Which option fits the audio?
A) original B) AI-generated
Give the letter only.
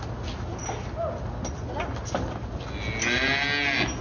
A